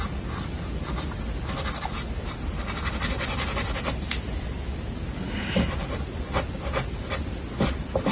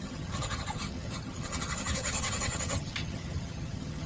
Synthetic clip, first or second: second